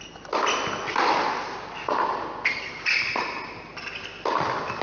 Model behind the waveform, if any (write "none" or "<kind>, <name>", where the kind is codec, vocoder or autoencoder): none